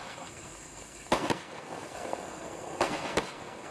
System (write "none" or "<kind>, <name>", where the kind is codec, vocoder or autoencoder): codec, SNAC